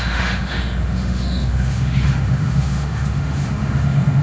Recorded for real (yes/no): no